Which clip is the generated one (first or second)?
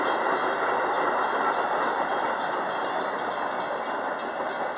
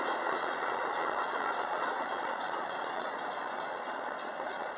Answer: second